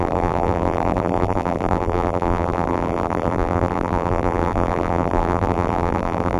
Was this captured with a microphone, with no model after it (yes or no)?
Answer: no